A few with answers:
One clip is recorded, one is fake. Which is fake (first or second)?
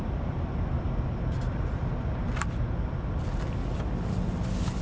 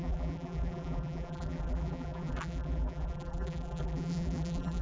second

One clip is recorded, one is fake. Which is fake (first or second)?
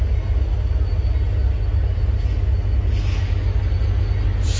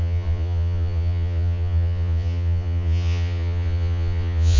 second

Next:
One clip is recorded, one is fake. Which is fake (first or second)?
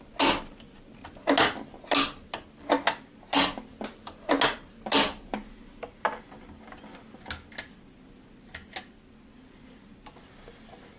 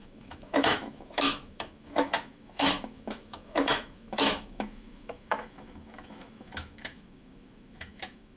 second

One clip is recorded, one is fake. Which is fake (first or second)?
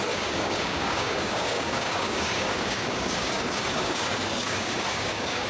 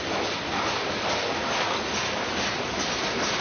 first